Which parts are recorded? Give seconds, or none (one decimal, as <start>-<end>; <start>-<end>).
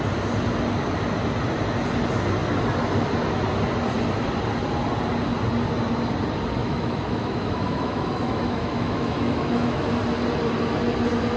0.0-6.6; 9.9-11.4